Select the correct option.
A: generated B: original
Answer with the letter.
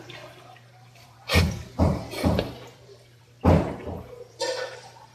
A